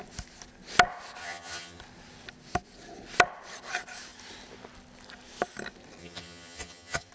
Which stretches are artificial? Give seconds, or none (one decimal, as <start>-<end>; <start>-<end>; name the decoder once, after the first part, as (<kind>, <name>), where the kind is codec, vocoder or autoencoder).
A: 1.2-1.8 (vocoder, HiFi-GAN); 6.0-7.1